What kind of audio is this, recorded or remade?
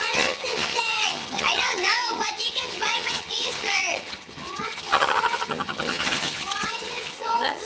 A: remade